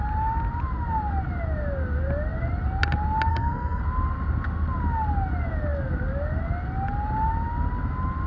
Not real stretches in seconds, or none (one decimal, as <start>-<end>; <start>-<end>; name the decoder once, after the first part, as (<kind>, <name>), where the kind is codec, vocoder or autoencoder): 3.3-3.8 (codec, SNAC)